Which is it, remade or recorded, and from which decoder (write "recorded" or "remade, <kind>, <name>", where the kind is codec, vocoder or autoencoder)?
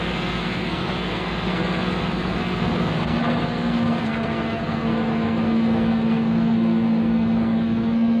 remade, codec, SNAC